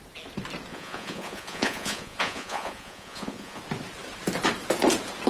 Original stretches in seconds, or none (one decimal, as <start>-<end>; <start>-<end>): 0.0-0.7; 3.6-5.3